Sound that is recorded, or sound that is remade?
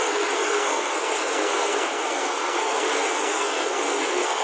remade